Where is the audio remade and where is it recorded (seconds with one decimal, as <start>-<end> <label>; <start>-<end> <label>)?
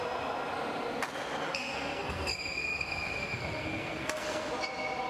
0.0-1.4 recorded; 1.4-4.5 remade; 4.5-5.1 recorded